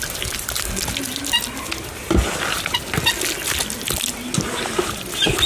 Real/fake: real